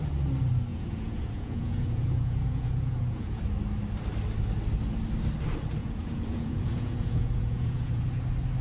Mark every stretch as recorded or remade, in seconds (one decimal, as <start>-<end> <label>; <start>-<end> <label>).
0.0-0.7 recorded; 0.7-3.4 remade; 3.4-5.8 recorded; 5.8-8.0 remade; 8.0-8.6 recorded

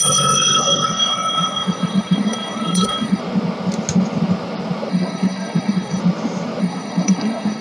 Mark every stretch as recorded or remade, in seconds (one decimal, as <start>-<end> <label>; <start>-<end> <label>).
0.0-3.2 remade; 3.2-4.9 recorded; 4.9-6.0 remade; 6.0-6.6 recorded; 6.6-7.6 remade

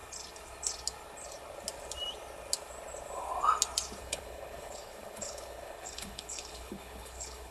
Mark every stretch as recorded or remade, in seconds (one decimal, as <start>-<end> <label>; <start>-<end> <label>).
0.0-4.0 recorded; 4.0-7.5 remade

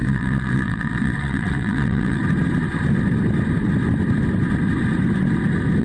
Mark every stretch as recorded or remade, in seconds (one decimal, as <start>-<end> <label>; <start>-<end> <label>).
0.0-2.2 remade; 2.2-5.8 recorded

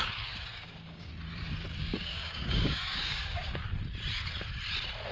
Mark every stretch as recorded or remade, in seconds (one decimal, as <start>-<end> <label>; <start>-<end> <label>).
0.0-1.1 remade; 1.1-1.8 recorded; 1.8-3.6 remade; 3.6-5.1 recorded

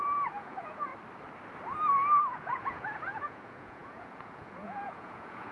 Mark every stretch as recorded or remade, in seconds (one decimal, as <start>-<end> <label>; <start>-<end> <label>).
0.0-0.9 remade; 0.9-2.3 recorded; 2.3-5.5 remade

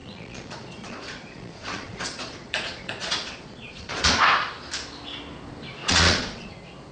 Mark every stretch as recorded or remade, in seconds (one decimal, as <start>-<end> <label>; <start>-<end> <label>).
0.0-4.1 remade; 4.1-5.8 recorded; 5.8-6.5 remade; 6.5-6.9 recorded